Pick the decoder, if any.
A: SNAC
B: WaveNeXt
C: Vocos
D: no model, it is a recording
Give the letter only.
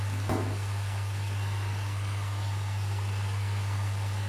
A